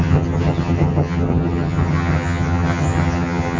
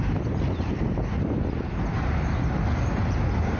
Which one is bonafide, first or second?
second